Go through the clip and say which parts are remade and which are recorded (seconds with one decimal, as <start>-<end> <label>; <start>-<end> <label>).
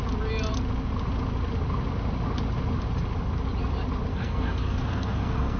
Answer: 0.0-4.1 recorded; 4.1-5.6 remade